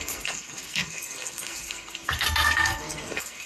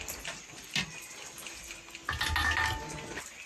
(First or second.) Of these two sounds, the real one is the second